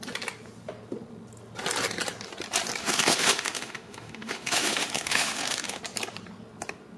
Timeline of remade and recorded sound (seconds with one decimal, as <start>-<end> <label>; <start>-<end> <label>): 0.0-2.8 recorded; 2.8-5.8 remade; 5.8-7.0 recorded